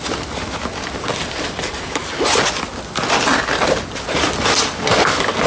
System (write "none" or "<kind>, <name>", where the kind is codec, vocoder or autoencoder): none